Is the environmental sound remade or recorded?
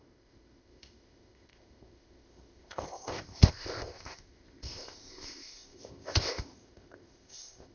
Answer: remade